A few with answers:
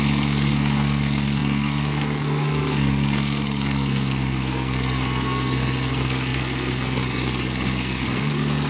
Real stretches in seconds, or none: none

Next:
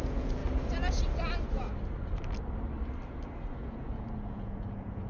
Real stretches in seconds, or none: 0.4-3.5

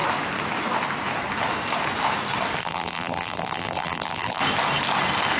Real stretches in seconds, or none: 0.0-2.6; 4.4-5.4

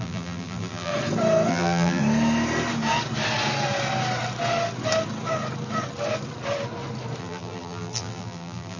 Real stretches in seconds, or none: 0.9-1.5; 2.0-7.2